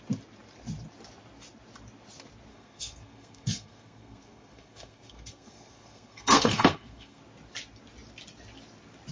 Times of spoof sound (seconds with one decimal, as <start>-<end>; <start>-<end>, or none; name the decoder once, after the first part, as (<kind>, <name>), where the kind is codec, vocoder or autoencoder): 2.5-7.2 (codec, SNAC)